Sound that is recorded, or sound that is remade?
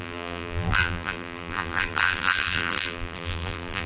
remade